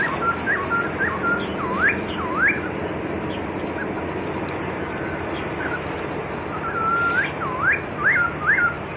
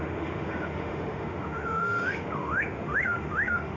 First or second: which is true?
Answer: first